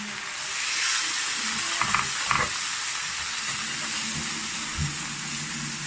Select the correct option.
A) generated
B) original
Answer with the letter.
B